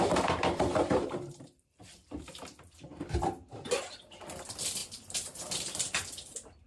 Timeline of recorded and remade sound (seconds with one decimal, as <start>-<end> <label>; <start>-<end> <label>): 0.0-6.7 remade